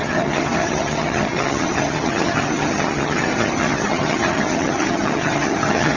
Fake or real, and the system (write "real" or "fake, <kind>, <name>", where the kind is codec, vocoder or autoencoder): fake, vocoder, HiFi-GAN